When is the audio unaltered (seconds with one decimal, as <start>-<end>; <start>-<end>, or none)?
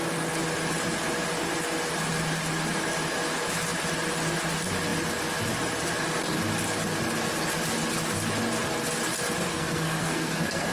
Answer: 0.0-9.5